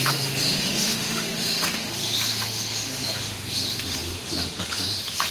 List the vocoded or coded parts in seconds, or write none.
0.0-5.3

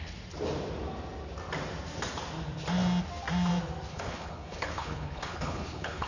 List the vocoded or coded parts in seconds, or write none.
3.9-6.1

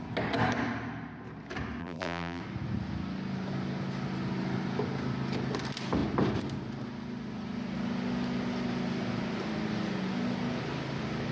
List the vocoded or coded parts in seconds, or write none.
1.8-2.4